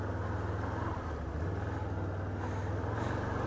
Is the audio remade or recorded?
recorded